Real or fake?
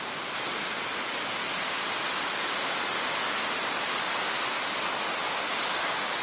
real